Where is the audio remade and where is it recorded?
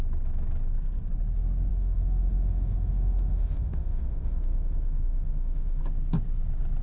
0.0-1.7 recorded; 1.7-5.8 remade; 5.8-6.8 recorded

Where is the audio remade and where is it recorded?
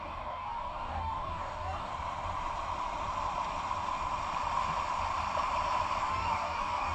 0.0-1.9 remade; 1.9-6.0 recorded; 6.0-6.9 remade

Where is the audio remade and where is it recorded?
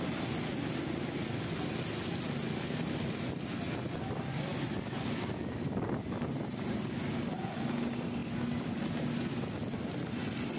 0.0-10.6 recorded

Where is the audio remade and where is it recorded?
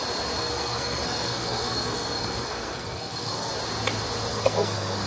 0.0-0.4 recorded; 0.4-3.5 remade; 3.5-4.3 recorded; 4.3-5.1 remade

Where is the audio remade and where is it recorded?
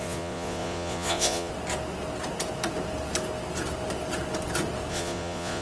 0.0-1.5 remade; 1.5-4.9 recorded; 4.9-5.6 remade